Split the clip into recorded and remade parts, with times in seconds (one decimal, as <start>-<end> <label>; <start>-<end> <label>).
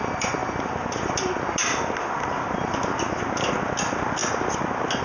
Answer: 0.0-5.0 recorded